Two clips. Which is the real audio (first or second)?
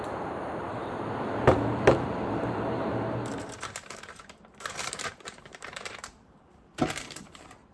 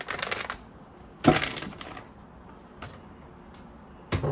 second